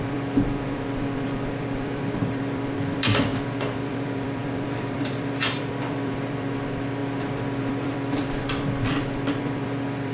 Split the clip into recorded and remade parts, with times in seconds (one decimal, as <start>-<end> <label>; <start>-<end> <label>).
0.0-7.0 remade; 7.0-7.6 recorded; 7.6-10.1 remade